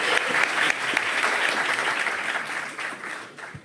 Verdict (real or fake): real